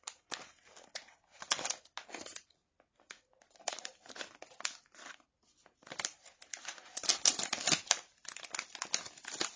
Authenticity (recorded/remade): recorded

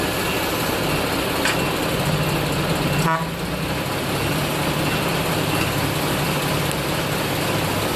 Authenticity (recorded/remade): recorded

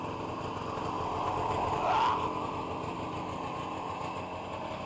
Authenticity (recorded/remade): remade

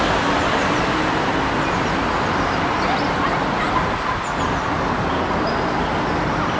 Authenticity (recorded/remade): recorded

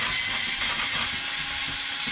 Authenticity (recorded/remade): recorded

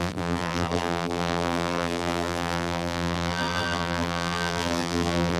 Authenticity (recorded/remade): remade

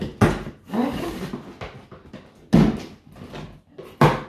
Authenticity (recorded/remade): recorded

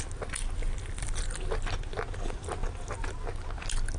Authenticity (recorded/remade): recorded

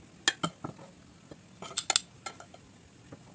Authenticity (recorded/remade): recorded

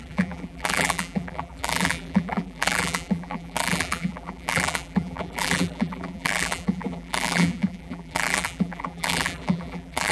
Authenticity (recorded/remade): remade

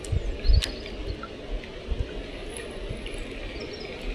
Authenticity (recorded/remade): recorded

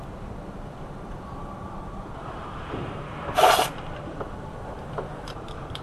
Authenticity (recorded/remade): remade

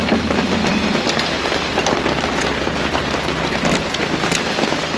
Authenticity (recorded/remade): remade